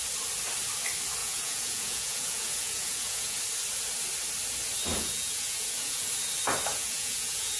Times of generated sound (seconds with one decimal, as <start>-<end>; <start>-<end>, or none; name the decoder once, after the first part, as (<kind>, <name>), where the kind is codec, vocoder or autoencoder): 1.2-3.4 (vocoder, Vocos); 4.9-6.1; 6.7-7.6

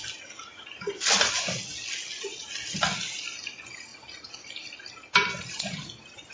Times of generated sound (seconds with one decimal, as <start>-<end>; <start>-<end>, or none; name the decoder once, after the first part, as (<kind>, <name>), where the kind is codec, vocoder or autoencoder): none

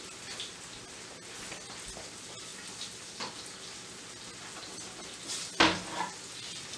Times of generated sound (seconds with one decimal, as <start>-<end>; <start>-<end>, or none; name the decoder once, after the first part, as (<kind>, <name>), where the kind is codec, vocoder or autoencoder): none

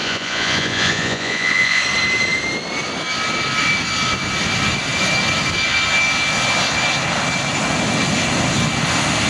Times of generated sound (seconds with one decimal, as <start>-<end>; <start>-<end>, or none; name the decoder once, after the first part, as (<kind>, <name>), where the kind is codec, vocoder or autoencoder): 0.0-1.8 (vocoder, Vocos)

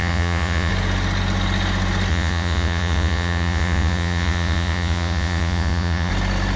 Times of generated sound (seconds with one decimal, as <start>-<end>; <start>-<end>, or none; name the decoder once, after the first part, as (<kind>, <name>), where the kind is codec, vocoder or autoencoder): 0.0-0.7 (vocoder, Vocos); 2.1-6.1

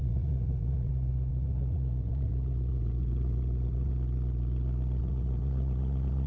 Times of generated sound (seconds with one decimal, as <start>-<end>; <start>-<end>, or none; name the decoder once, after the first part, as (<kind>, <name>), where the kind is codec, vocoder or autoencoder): 0.0-0.9 (vocoder, Vocos); 1.3-3.9; 5.0-6.3

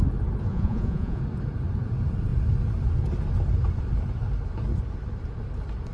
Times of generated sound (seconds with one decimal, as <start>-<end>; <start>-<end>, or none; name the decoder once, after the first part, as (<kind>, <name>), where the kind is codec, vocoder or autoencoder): 0.5-1.2 (vocoder, Vocos)